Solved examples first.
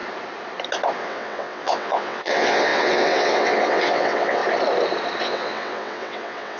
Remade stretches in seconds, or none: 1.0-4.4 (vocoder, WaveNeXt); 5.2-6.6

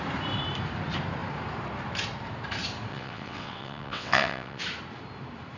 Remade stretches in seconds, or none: 2.9-4.6 (vocoder, WaveNeXt)

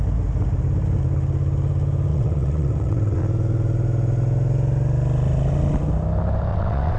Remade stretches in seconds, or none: 2.1-3.2 (vocoder, WaveNeXt); 6.5-7.0

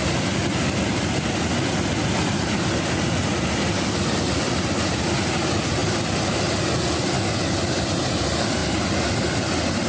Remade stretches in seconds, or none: none

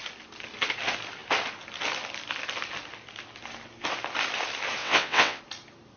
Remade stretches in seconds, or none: 4.8-5.4 (vocoder, WaveNeXt)

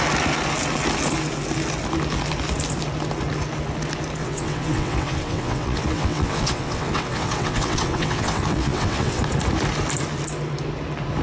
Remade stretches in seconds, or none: 4.2-9.2 (vocoder, WaveNeXt)

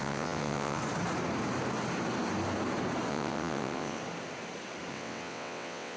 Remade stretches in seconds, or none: 0.0-0.8 (vocoder, WaveNeXt); 3.1-4.0; 4.9-6.0

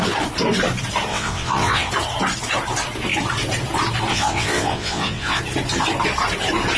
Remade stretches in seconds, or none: 1.1-1.9 (vocoder, WaveNeXt); 4.1-5.4